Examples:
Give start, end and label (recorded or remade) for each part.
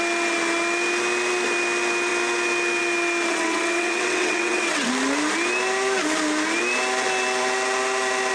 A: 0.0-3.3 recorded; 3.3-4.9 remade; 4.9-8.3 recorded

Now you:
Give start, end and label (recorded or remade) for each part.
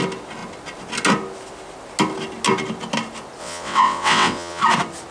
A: 0.0-3.4 recorded; 3.4-4.6 remade; 4.6-5.1 recorded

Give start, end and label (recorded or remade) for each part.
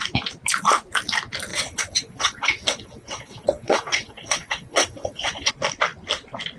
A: 0.0-1.5 recorded; 1.5-5.5 remade; 5.5-6.6 recorded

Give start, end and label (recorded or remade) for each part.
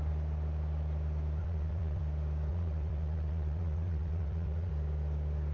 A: 0.0-1.4 recorded; 1.4-2.0 remade; 2.0-2.5 recorded; 2.5-4.7 remade; 4.7-5.5 recorded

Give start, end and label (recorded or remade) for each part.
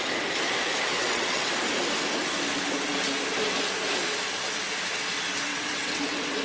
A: 0.0-1.0 recorded; 1.0-1.5 remade; 1.5-5.5 recorded; 5.5-6.4 remade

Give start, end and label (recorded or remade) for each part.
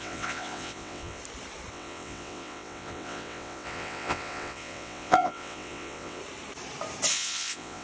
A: 0.0-1.2 remade; 1.2-1.7 recorded; 1.7-6.2 remade; 6.2-7.1 recorded; 7.1-7.8 remade